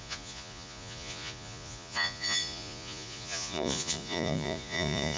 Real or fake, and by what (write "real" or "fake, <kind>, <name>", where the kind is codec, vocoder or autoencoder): fake, vocoder, Vocos